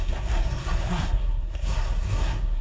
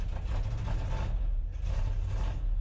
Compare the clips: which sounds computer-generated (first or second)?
first